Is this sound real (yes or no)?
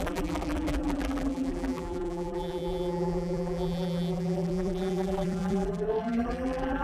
no